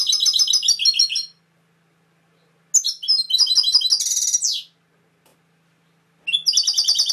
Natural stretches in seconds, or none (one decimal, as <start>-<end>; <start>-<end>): 0.0-7.1